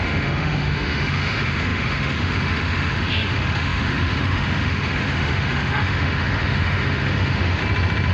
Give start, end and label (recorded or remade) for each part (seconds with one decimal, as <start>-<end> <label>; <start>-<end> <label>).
0.0-7.6 remade; 7.6-8.1 recorded